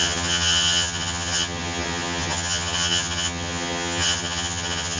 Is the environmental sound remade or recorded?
remade